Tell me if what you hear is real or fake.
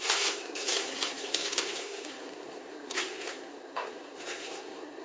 fake